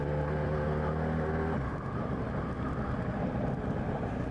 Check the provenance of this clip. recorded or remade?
recorded